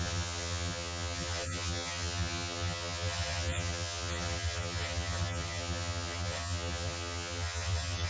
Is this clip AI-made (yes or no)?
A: yes